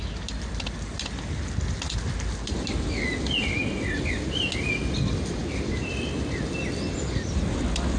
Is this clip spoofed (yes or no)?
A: no